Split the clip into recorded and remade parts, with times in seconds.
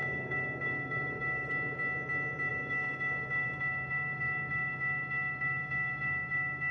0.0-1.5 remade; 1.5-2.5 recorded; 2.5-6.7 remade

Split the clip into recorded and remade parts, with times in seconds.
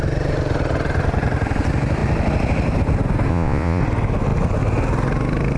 0.0-3.3 recorded; 3.3-3.8 remade; 3.8-5.6 recorded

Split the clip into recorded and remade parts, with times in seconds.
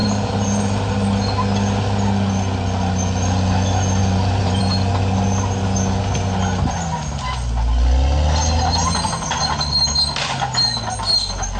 0.0-0.9 remade; 0.9-4.0 recorded; 4.0-4.6 remade; 4.6-11.6 recorded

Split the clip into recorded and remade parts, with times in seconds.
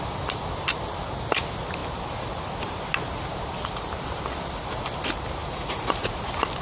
0.0-5.4 recorded; 5.4-6.1 remade; 6.1-6.6 recorded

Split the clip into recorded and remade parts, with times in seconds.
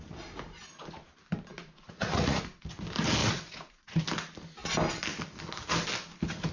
0.0-1.5 recorded; 1.5-2.6 remade; 2.6-3.2 recorded; 3.2-4.0 remade; 4.0-6.5 recorded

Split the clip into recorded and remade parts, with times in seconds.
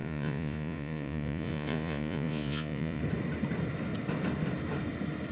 0.0-3.0 remade; 3.0-5.3 recorded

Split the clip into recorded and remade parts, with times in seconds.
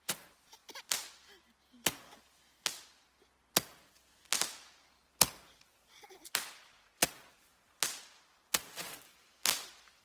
0.0-10.0 recorded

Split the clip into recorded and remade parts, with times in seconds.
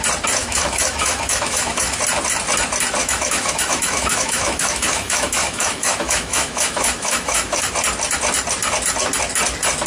0.0-0.4 recorded; 0.4-2.0 remade; 2.0-3.0 recorded; 3.0-7.7 remade; 7.7-9.9 recorded